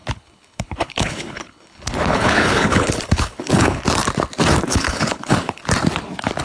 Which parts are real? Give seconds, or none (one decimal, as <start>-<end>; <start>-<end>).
3.8-4.7; 5.6-6.4